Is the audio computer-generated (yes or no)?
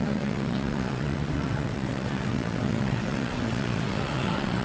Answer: yes